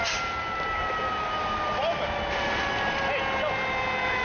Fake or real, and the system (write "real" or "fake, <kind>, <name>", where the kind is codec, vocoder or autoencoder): real